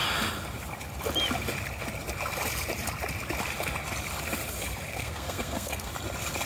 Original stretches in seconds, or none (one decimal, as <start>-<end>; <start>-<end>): 0.0-4.9; 5.9-6.5